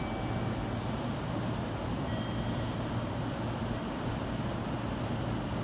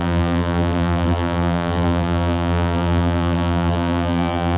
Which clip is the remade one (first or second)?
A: second